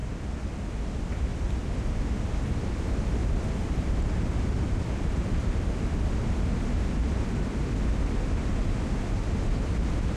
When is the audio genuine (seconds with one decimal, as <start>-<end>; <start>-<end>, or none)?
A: 0.0-1.3; 2.7-3.2; 5.6-10.2